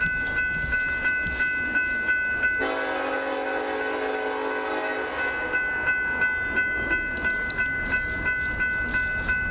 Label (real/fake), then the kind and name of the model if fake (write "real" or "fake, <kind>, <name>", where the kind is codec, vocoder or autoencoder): real